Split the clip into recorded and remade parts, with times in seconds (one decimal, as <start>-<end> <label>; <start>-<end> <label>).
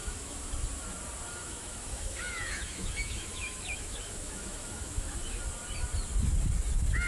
0.0-0.5 remade; 0.5-1.4 recorded; 1.4-5.4 remade; 5.4-7.1 recorded